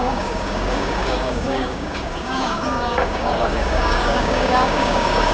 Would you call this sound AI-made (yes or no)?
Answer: yes